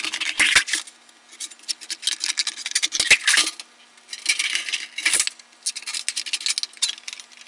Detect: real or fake real